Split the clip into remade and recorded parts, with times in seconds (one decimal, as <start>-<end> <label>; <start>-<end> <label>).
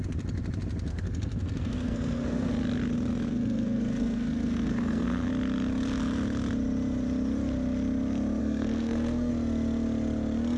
0.0-0.9 recorded; 0.9-2.5 remade; 2.5-3.3 recorded; 3.3-5.3 remade; 5.3-8.4 recorded; 8.4-9.3 remade; 9.3-10.6 recorded